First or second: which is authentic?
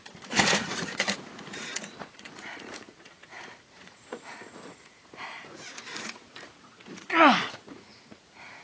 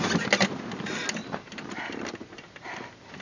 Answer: second